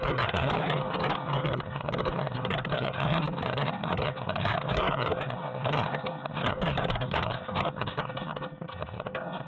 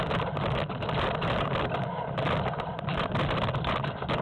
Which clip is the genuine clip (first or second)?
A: second